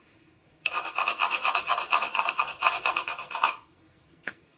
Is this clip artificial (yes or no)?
yes